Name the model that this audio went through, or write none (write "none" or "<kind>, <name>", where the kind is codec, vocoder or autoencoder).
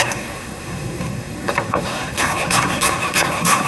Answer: codec, SNAC